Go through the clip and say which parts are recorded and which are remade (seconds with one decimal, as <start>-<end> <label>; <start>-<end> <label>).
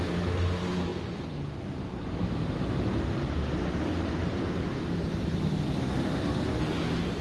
0.0-7.2 recorded